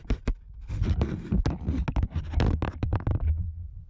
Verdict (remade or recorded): recorded